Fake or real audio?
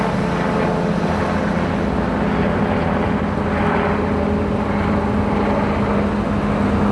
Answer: real